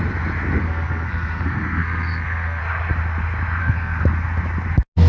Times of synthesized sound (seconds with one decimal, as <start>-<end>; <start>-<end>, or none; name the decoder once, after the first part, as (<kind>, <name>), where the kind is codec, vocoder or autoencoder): 0.6-2.6 (codec, SNAC); 3.6-4.0